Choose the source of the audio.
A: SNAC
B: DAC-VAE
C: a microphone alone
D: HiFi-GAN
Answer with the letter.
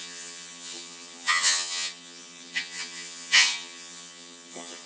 D